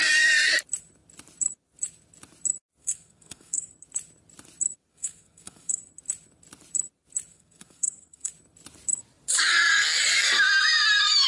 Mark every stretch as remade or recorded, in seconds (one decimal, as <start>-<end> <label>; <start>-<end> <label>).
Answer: 0.0-2.8 recorded; 2.8-3.7 remade; 3.7-4.9 recorded; 4.9-5.8 remade; 5.8-7.3 recorded; 7.3-8.3 remade; 8.3-11.3 recorded